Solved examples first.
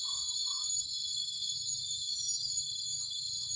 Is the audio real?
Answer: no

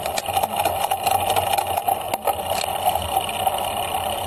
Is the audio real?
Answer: yes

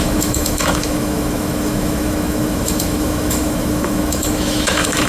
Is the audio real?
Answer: no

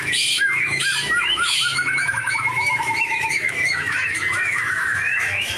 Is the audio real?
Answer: no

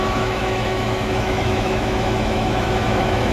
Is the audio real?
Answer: no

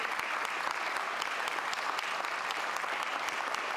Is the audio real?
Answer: yes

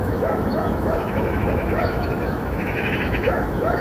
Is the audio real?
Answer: no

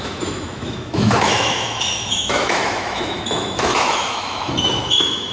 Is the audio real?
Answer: no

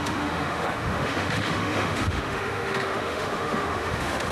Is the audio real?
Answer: no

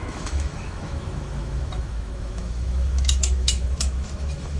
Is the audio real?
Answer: no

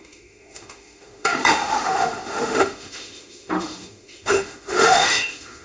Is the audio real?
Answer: no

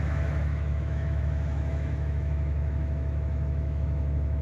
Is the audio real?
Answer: no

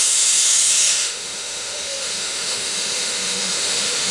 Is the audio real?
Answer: no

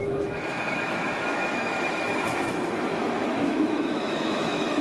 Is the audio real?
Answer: no